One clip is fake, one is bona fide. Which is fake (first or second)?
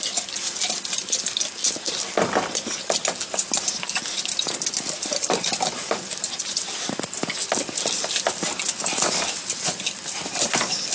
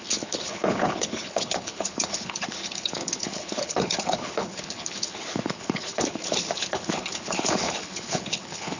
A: second